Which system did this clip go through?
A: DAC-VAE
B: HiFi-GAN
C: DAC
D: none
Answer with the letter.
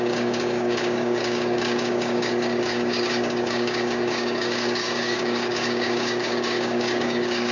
C